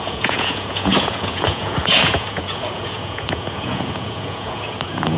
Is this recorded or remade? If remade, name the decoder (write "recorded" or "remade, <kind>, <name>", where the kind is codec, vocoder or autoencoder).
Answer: remade, vocoder, Vocos